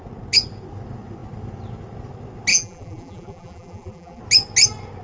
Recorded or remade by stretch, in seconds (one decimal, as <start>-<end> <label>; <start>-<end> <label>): 0.0-2.5 recorded; 2.5-4.2 remade; 4.2-5.0 recorded